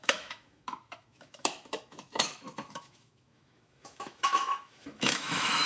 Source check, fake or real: fake